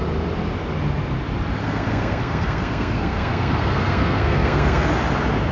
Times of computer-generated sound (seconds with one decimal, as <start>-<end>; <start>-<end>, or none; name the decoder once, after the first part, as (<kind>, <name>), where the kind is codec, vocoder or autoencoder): 1.6-4.9 (codec, SNAC)